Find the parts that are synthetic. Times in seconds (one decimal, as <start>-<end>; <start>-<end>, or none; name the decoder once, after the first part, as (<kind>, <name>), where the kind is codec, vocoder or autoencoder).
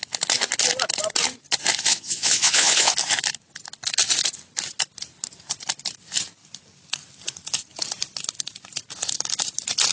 1.9-2.9 (vocoder, Vocos)